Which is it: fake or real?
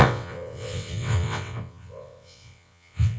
fake